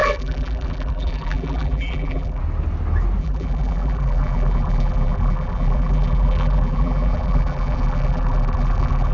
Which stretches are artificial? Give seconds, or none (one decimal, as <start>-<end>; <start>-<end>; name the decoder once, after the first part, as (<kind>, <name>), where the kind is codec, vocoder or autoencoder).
0.0-2.4 (vocoder, BigVGAN v2); 3.2-9.1